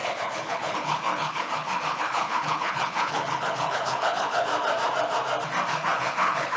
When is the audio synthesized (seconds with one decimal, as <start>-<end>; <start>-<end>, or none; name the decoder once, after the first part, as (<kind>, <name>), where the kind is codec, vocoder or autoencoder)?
0.0-4.5 (codec, HILCodec); 5.7-6.6